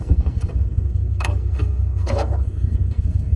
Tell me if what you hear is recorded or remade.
remade